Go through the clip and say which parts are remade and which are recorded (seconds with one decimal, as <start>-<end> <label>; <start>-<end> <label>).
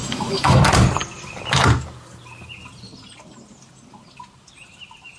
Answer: 0.0-0.6 remade; 0.6-5.2 recorded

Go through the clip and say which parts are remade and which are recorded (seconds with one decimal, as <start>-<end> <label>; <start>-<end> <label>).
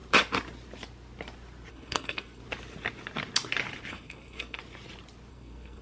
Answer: 0.0-1.7 recorded; 1.7-2.4 remade; 2.4-3.9 recorded; 3.9-4.6 remade; 4.6-5.3 recorded; 5.3-5.8 remade